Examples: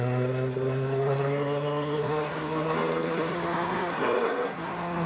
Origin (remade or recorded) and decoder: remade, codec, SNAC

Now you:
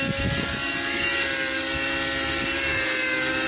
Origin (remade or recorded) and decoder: recorded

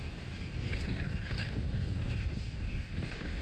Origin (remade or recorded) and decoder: remade, codec, DAC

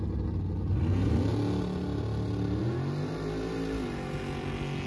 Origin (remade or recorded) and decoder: recorded